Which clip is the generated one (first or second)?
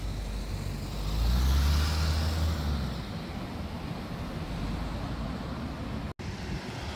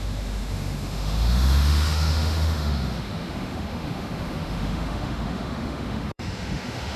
second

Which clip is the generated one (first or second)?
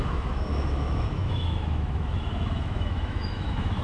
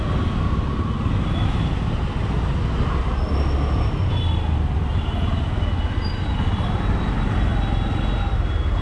first